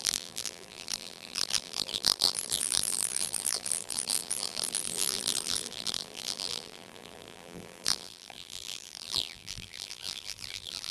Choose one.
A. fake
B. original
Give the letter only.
A